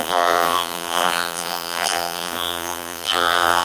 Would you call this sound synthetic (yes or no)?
yes